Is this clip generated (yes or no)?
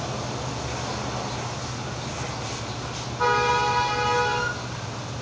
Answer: no